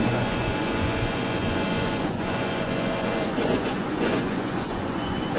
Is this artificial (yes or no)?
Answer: yes